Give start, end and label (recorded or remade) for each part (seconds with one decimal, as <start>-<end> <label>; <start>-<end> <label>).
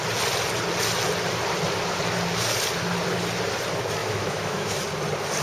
0.0-4.0 recorded; 4.0-4.8 remade; 4.8-5.4 recorded